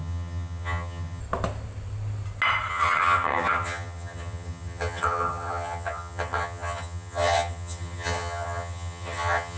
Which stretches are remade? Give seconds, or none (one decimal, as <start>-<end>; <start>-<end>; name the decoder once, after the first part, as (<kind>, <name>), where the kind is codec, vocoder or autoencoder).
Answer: 0.0-1.2 (vocoder, HiFi-GAN); 2.7-9.6